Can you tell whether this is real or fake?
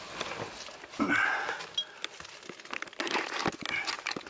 real